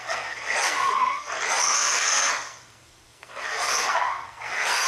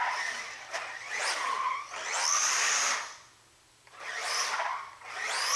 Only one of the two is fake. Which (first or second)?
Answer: first